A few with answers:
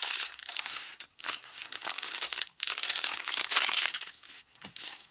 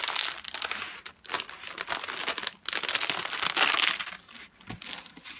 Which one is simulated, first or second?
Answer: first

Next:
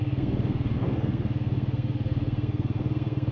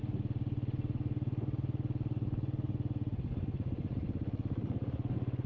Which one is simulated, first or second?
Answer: first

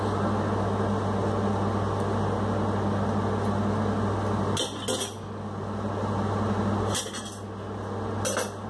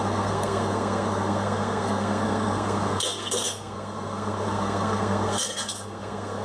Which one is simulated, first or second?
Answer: second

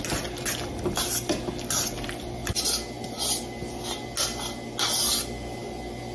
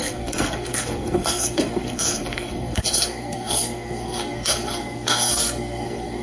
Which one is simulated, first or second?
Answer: second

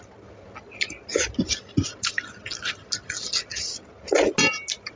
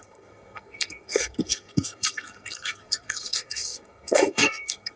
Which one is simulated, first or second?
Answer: second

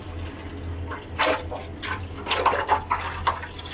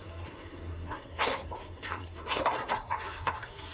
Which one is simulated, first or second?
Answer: second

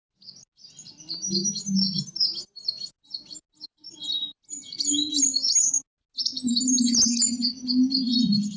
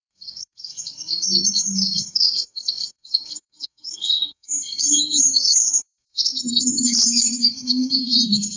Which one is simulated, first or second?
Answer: second